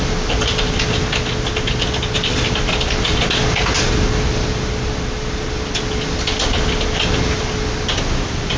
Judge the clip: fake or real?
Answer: real